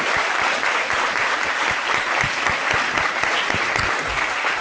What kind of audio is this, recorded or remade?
recorded